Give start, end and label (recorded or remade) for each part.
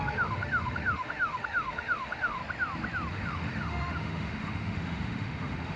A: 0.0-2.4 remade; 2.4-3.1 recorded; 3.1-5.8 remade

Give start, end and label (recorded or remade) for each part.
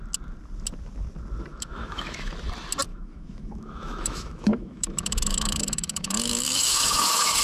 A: 0.0-1.5 recorded; 1.5-2.3 remade; 2.3-2.9 recorded; 2.9-7.4 remade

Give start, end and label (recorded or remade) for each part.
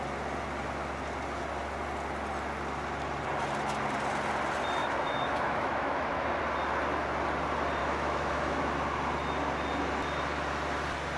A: 0.0-4.8 recorded; 4.8-6.4 remade; 6.4-7.8 recorded; 7.8-8.6 remade; 8.6-11.2 recorded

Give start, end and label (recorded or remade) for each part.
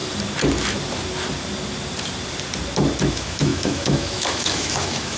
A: 0.0-3.1 recorded; 3.1-5.2 remade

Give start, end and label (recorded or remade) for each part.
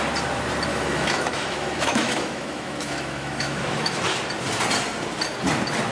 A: 0.0-0.7 recorded; 0.7-4.0 remade; 4.0-5.9 recorded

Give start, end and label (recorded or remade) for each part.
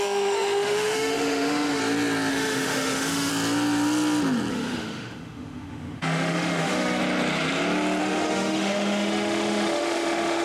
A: 0.0-1.8 remade; 1.8-2.3 recorded; 2.3-3.3 remade; 3.3-4.5 recorded; 4.5-7.0 remade; 7.0-8.0 recorded; 8.0-10.4 remade